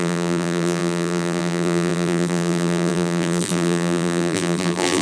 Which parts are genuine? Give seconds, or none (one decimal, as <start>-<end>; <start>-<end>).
none

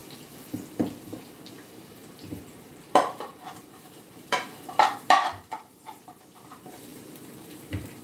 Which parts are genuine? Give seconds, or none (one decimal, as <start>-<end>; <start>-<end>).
0.0-1.5

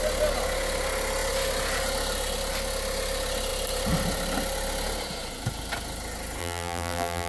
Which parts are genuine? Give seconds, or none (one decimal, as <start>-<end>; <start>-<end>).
0.0-6.4

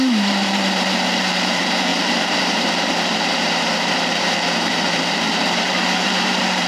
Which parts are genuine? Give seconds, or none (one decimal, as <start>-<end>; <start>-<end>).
none